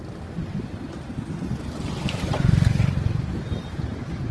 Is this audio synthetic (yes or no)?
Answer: no